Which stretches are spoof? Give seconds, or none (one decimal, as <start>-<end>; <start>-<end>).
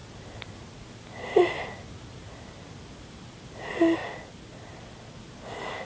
1.8-2.8